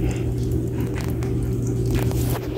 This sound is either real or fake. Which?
real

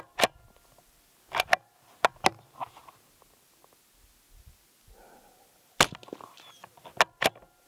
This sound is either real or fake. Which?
real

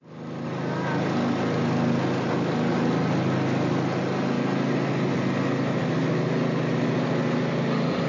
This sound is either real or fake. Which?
real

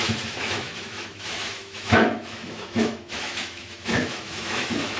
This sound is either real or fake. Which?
fake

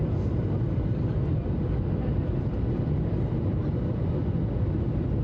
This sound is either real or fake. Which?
real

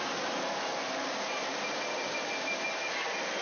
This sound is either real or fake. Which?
real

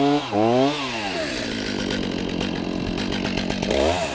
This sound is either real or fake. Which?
real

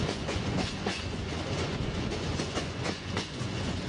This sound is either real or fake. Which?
fake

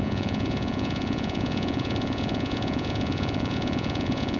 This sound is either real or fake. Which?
fake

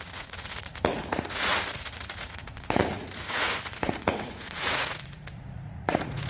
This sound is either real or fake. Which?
fake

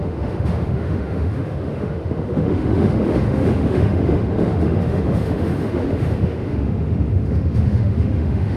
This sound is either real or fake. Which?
fake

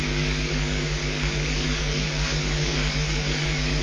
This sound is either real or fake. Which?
fake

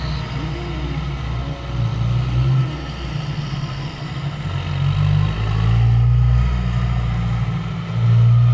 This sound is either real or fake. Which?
real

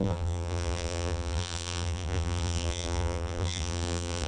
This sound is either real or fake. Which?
fake